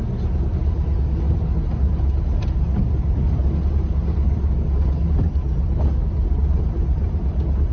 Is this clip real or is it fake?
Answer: real